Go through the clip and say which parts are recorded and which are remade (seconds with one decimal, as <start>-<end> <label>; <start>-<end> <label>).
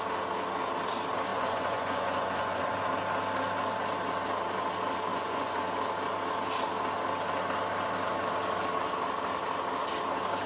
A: 0.0-1.3 recorded; 1.3-2.7 remade; 2.7-5.1 recorded; 5.1-5.6 remade; 5.6-10.5 recorded